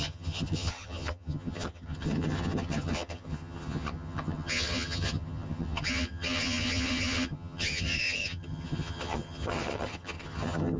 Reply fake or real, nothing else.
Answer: fake